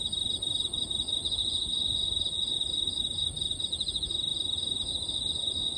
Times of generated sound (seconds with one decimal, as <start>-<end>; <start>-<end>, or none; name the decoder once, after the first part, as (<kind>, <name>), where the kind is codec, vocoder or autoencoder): none